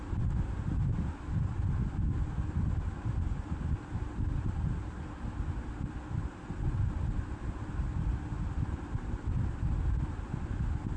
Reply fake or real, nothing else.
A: real